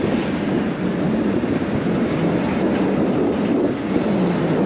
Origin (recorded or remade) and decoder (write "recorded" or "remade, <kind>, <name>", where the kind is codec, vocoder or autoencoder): recorded